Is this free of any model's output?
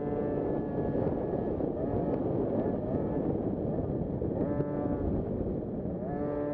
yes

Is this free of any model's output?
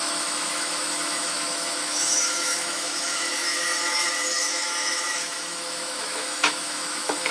no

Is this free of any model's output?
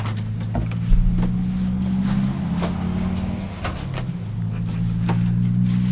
yes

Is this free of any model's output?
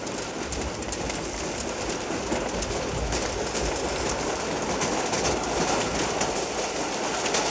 yes